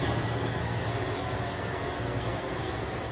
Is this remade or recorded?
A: remade